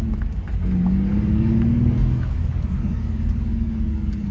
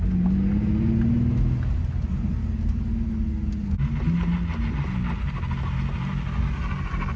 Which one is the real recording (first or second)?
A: second